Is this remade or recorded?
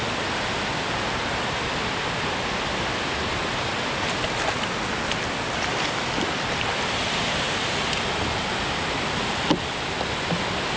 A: recorded